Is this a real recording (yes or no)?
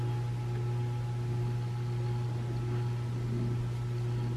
yes